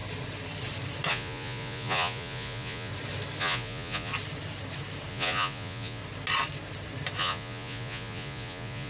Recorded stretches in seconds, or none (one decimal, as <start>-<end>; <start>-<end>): 0.0-1.1; 2.9-3.4; 4.1-5.1; 6.0-7.2